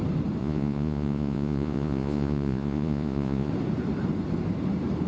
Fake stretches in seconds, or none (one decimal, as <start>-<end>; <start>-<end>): 0.4-3.5